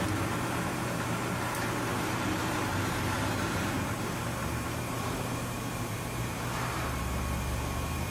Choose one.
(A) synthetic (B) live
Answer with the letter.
A